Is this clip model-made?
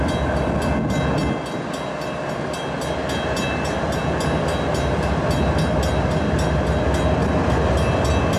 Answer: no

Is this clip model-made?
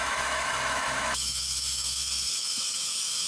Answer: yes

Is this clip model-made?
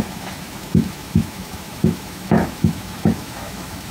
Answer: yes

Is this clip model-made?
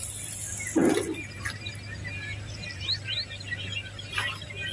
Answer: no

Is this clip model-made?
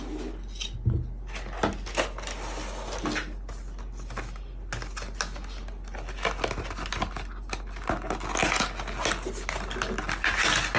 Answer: no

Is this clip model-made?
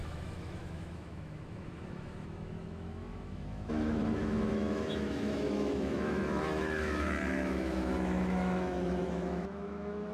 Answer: yes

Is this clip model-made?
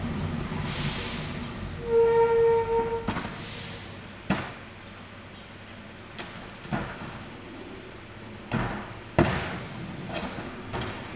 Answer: no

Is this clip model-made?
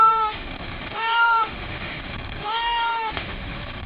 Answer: yes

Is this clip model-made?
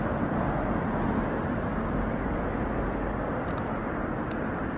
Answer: no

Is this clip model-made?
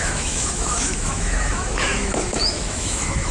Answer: yes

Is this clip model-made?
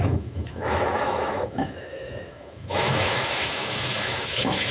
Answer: yes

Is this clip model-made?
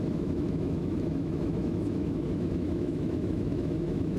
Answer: yes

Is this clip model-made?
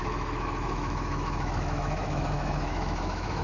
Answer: yes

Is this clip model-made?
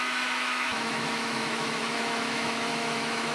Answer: yes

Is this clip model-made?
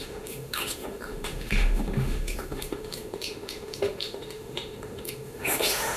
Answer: yes